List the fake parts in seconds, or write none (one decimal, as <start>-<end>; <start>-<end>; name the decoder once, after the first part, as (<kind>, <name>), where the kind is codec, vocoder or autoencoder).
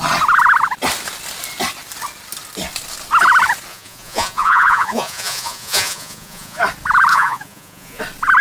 3.7-6.6 (vocoder, Vocos); 7.1-8.0